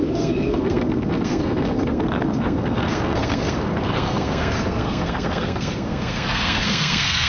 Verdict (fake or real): fake